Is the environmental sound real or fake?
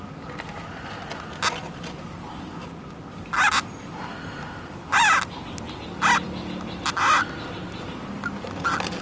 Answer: real